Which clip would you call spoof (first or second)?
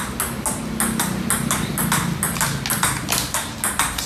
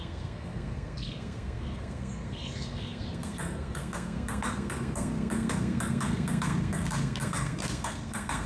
second